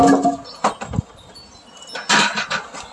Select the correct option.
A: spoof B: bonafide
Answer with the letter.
B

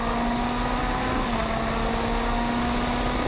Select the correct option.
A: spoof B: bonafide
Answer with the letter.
B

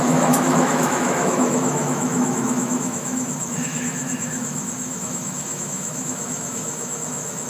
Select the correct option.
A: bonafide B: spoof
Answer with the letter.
B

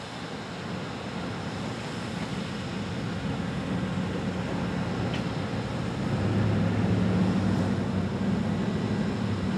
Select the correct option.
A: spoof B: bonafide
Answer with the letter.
B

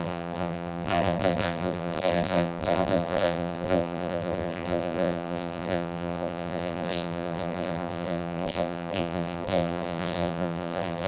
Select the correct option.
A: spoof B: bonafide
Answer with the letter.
A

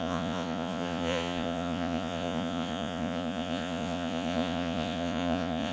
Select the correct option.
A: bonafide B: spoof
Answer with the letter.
B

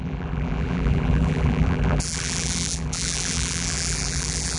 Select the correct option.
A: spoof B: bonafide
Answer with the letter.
A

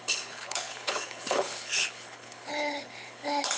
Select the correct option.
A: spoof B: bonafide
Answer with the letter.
A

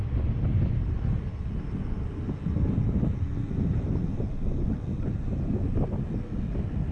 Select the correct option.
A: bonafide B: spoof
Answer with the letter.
A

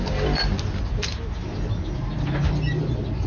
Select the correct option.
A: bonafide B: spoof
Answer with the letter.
A